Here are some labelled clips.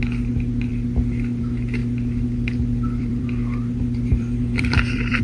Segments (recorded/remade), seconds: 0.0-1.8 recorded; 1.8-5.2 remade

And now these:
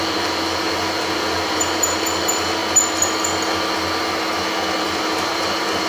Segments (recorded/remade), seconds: 0.0-2.6 remade; 2.6-4.8 recorded; 4.8-5.9 remade

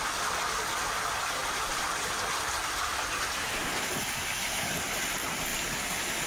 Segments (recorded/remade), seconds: 0.0-6.3 recorded

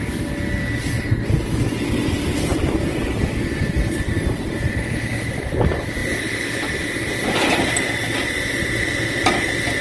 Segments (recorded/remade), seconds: 0.0-2.5 recorded; 2.5-5.6 remade; 5.6-9.8 recorded

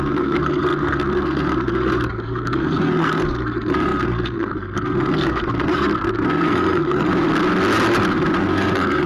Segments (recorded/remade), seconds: 0.0-7.1 remade; 7.1-8.4 recorded; 8.4-9.1 remade